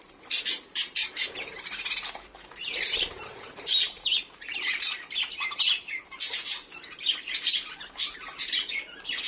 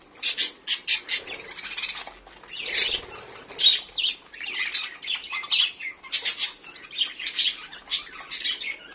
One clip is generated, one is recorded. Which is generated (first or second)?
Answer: first